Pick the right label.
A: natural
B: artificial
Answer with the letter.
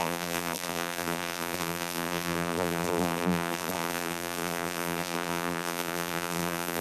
B